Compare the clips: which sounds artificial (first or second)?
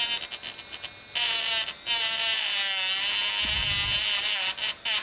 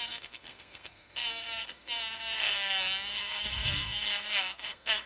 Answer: second